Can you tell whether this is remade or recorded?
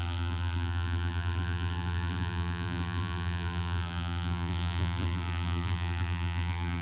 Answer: remade